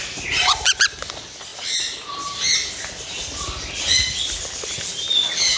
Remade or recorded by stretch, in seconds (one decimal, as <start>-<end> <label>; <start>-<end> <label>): 0.0-5.6 recorded